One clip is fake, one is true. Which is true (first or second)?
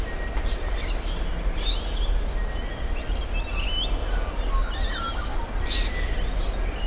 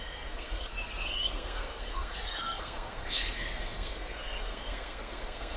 first